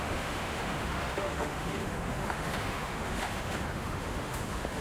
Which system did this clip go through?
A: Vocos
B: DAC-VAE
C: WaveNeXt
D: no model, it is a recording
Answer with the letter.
B